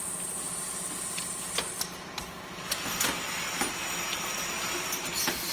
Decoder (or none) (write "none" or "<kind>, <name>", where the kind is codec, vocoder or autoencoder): none